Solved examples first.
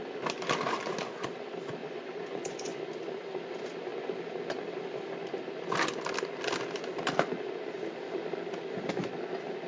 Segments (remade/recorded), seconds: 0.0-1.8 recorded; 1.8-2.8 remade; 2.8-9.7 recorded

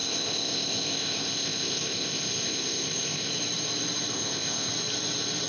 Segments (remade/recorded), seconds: 0.0-3.3 remade; 3.3-4.1 recorded; 4.1-4.7 remade; 4.7-5.5 recorded